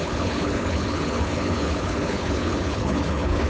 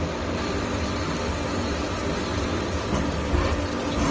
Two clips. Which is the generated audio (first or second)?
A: first